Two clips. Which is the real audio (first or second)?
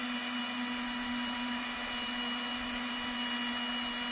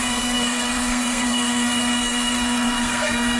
first